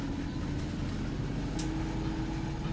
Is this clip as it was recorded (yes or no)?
yes